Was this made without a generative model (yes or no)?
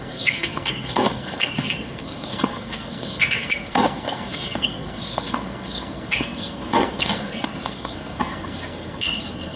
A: no